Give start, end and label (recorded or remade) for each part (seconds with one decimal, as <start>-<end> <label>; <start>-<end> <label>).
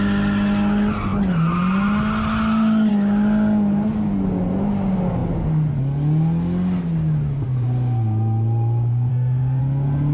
0.0-9.1 recorded; 9.1-9.6 remade; 9.6-10.1 recorded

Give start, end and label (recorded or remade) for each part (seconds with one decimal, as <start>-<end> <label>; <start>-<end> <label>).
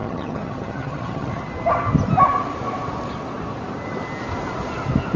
0.0-1.5 remade; 1.5-5.2 recorded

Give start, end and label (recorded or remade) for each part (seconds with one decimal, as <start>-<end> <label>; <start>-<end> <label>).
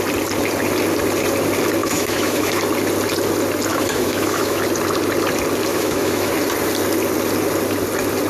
0.0-1.8 recorded; 1.8-2.6 remade; 2.6-3.7 recorded; 3.7-4.6 remade; 4.6-5.7 recorded; 5.7-6.3 remade; 6.3-8.3 recorded